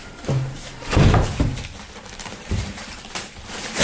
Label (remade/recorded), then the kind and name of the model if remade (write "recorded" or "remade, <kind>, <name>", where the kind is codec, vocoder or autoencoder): remade, vocoder, BigVGAN v2